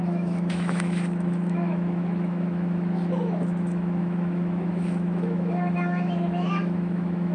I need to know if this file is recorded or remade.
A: remade